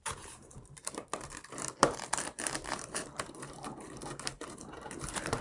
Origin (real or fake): fake